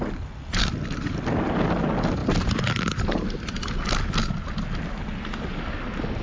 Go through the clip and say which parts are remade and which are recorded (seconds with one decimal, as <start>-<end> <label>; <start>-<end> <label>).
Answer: 0.0-6.2 recorded